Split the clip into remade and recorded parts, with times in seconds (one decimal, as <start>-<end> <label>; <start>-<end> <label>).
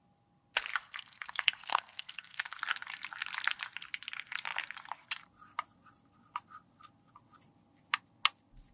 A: 0.0-0.7 recorded; 0.7-2.6 remade; 2.6-8.7 recorded